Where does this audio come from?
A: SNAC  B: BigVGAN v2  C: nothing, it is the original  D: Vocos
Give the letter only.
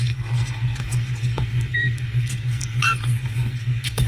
A